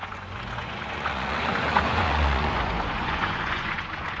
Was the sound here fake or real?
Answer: fake